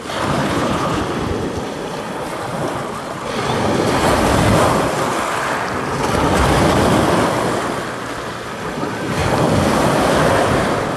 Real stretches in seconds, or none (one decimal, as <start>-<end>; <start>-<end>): 0.0-0.4; 1.0-11.0